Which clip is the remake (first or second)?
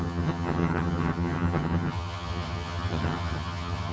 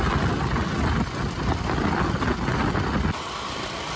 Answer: first